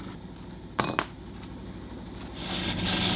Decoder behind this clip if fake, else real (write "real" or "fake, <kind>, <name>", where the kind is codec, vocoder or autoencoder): real